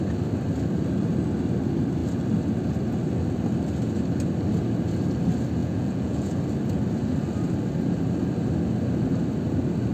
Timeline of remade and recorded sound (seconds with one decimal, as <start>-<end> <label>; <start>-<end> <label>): 0.0-5.6 recorded; 5.6-6.4 remade; 6.4-9.9 recorded